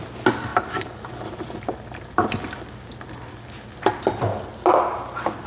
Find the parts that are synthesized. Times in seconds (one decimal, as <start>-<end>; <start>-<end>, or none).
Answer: none